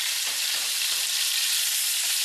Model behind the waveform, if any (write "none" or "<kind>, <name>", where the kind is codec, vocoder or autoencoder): none